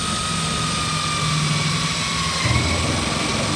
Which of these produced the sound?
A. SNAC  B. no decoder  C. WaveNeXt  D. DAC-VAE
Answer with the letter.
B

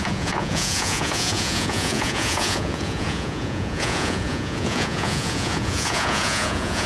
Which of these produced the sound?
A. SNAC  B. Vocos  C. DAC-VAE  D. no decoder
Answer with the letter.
B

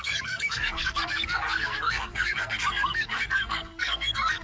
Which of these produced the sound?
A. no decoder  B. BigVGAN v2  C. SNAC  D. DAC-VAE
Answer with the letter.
C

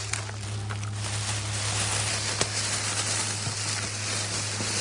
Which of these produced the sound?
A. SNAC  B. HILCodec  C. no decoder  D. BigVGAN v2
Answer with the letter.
C